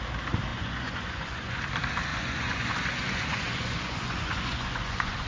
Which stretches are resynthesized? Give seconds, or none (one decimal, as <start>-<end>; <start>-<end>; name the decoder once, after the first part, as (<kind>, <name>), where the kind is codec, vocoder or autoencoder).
0.5-1.6 (vocoder, Vocos); 2.1-5.3